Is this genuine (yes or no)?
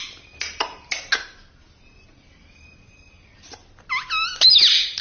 yes